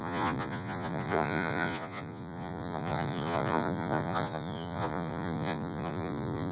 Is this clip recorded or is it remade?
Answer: remade